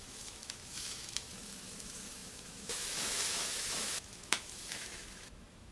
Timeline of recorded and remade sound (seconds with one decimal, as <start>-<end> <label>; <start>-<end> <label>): 0.0-5.7 remade